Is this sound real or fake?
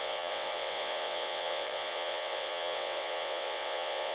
fake